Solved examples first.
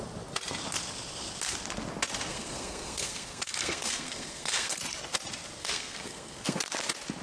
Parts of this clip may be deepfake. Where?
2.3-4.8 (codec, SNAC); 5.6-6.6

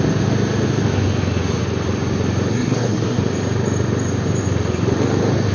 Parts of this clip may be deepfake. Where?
2.5-3.2 (codec, SNAC)

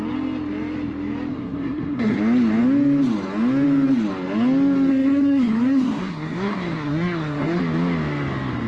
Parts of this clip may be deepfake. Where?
1.3-2.2 (codec, SNAC); 4.9-7.6

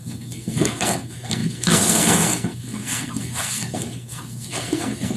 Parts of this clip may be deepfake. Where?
0.0-5.2 (codec, SNAC)

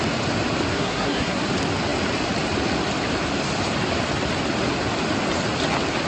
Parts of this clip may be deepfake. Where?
0.7-1.4 (codec, SNAC)

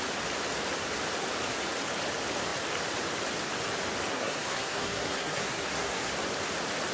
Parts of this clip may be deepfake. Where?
4.1-6.1 (codec, SNAC)

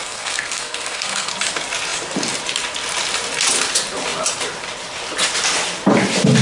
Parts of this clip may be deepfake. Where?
0.0-1.3 (codec, SNAC)

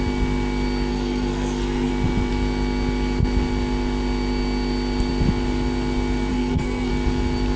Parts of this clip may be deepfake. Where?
0.9-1.9 (codec, SNAC); 6.3-6.9